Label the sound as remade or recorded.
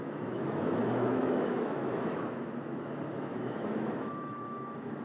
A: remade